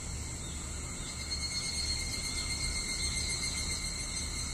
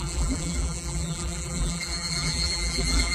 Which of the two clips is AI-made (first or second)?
second